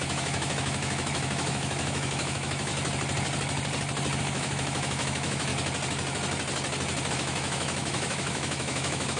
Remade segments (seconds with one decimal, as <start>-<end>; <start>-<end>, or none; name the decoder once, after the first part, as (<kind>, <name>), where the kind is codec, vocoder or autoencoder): 0.0-2.7 (autoencoder, DAC-VAE); 4.2-5.5; 7.1-9.2